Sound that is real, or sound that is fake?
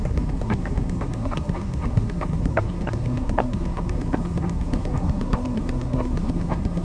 fake